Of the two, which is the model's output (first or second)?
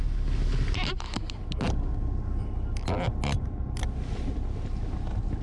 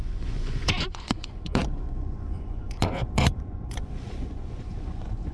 second